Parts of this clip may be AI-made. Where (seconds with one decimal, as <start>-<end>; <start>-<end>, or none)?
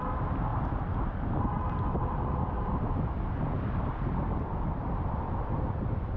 none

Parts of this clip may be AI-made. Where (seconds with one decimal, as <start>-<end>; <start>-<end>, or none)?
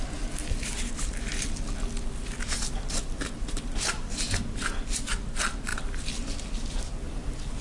none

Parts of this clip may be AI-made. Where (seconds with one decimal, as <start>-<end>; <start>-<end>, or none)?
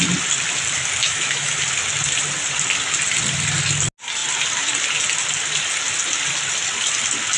1.0-1.6